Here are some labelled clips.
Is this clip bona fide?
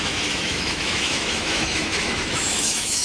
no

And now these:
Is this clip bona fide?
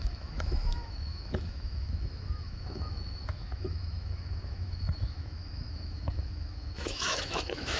no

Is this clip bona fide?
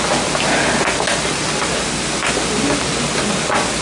yes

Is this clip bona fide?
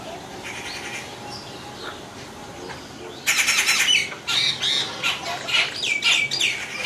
yes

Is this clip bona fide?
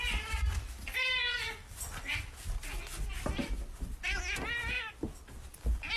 yes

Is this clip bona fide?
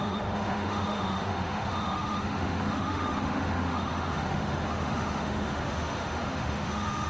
no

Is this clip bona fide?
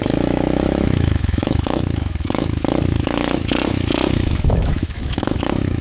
no